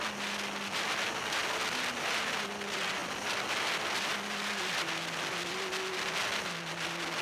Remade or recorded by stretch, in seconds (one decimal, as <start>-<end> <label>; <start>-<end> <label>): 0.0-7.2 recorded